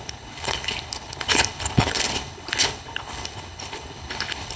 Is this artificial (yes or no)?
yes